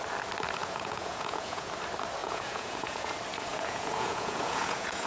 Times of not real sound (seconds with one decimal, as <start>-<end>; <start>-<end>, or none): 0.6-1.7; 2.2-3.1; 3.5-5.1